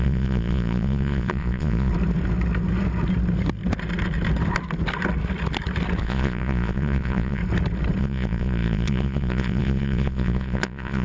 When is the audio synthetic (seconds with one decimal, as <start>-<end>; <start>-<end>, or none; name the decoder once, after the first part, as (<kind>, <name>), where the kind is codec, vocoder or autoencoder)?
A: 0.0-1.9 (vocoder, Vocos); 6.0-7.4; 8.0-11.0